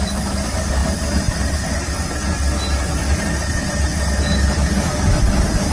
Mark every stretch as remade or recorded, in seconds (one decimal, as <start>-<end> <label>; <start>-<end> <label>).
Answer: 0.0-5.7 recorded